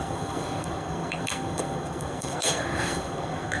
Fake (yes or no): yes